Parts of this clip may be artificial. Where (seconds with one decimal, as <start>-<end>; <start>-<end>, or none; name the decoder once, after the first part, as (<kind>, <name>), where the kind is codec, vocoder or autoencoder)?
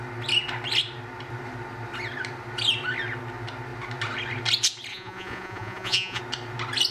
4.9-6.2 (vocoder, Vocos)